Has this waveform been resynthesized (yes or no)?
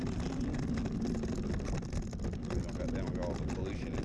no